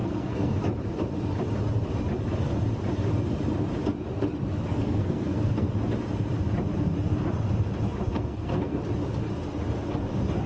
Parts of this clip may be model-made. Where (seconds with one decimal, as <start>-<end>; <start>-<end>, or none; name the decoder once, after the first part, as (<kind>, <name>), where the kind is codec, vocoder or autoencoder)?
0.0-0.6 (codec, SNAC); 4.7-5.7; 8.1-8.8